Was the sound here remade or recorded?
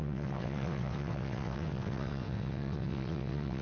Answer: remade